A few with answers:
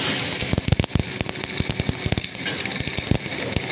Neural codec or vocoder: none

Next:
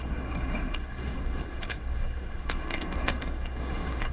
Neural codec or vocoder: codec, SNAC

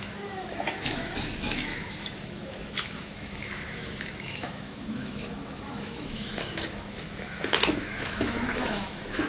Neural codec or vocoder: autoencoder, DAC-VAE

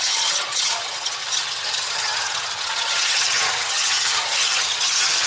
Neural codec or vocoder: vocoder, HiFi-GAN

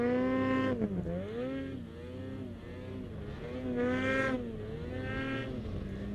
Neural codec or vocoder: none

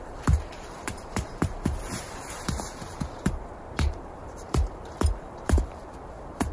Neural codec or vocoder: vocoder, BigVGAN v2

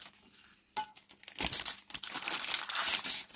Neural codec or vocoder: none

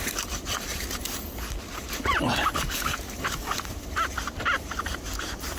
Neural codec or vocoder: vocoder, BigVGAN v2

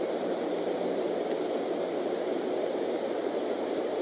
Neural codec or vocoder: none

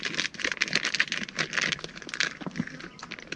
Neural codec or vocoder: none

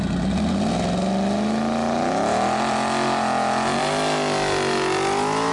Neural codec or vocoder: none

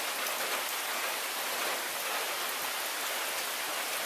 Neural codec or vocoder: none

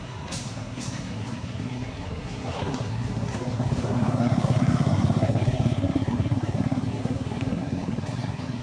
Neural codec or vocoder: codec, SNAC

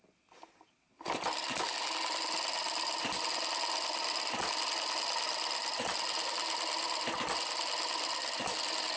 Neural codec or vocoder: none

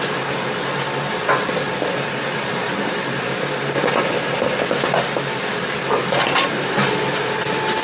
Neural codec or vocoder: none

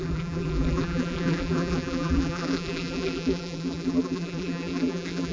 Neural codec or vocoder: vocoder, BigVGAN v2